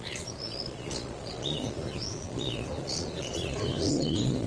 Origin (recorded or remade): remade